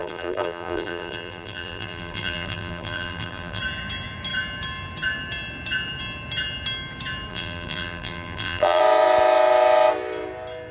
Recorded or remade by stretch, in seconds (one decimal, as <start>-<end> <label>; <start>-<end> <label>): 0.0-3.6 remade; 3.6-7.3 recorded; 7.3-8.8 remade; 8.8-10.7 recorded